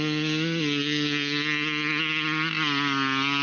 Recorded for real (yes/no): yes